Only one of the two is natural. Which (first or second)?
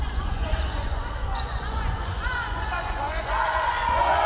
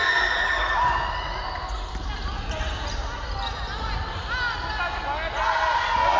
second